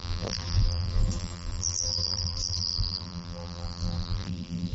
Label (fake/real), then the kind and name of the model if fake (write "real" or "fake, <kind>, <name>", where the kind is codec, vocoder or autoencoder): fake, vocoder, BigVGAN v2